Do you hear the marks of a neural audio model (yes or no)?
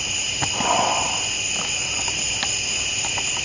no